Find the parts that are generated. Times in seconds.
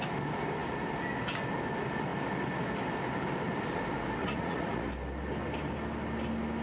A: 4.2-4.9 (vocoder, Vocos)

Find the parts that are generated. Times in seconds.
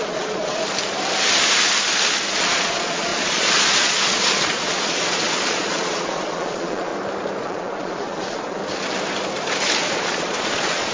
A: 0.0-0.6 (vocoder, Vocos); 2.4-6.9; 7.4-8.6; 9.8-10.9